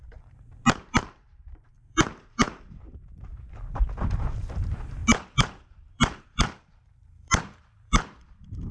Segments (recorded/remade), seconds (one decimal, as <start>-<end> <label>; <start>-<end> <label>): 0.0-8.7 remade